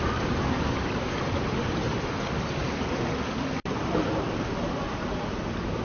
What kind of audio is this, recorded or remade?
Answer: remade